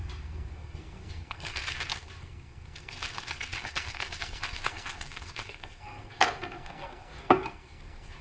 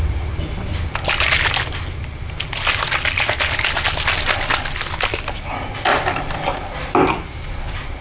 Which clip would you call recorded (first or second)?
second